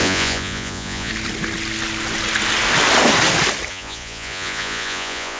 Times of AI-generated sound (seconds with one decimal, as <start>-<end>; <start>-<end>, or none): 0.0-1.1; 3.7-5.4